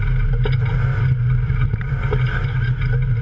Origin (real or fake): real